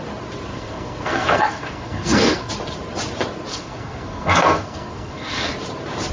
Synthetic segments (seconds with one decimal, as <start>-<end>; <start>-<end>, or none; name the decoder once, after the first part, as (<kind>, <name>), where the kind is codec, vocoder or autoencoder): 0.5-2.5 (codec, SNAC); 3.5-5.5